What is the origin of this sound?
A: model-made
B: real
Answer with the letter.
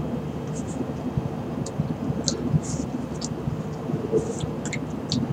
B